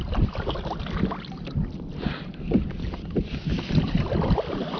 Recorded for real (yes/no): yes